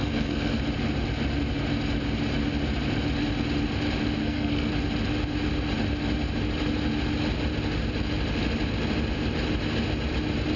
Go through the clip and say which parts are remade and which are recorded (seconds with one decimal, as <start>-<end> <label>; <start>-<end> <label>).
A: 0.0-0.6 remade; 0.6-4.2 recorded; 4.2-4.7 remade; 4.7-10.6 recorded